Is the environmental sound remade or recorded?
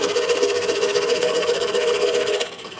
remade